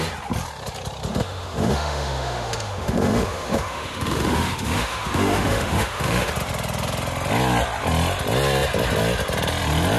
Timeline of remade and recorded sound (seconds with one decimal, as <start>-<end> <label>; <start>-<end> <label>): 0.0-1.1 recorded; 1.1-6.3 remade; 6.3-10.0 recorded